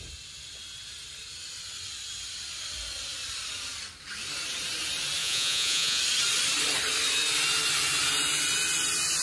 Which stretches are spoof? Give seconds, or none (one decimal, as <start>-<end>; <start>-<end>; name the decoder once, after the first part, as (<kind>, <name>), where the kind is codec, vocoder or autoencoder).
5.2-6.0 (vocoder, Vocos)